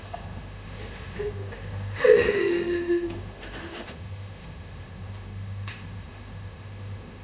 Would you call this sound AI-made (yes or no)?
yes